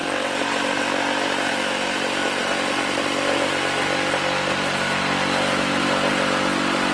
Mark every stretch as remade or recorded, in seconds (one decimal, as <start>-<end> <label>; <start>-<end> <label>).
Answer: 0.0-6.9 recorded